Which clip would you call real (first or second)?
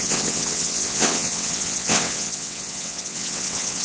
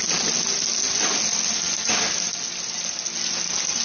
second